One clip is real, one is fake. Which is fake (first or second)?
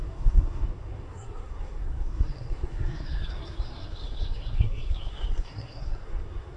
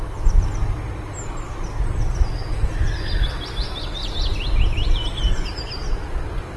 first